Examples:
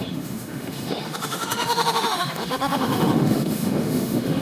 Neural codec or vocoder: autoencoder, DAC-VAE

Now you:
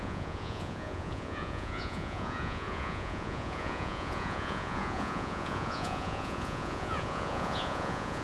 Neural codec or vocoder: vocoder, Vocos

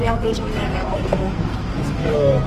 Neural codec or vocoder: codec, SNAC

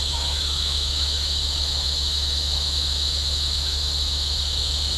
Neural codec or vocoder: autoencoder, DAC-VAE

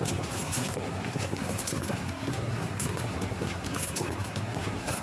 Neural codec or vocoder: codec, SNAC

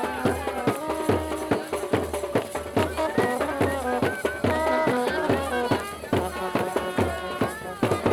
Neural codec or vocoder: none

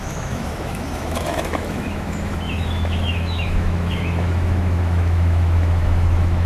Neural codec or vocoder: autoencoder, DAC-VAE